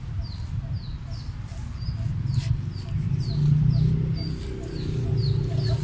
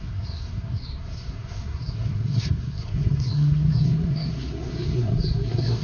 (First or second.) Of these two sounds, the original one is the first